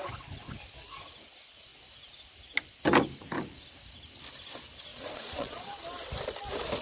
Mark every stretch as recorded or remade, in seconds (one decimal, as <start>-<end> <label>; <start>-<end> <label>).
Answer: 0.0-4.9 recorded; 4.9-5.8 remade; 5.8-6.8 recorded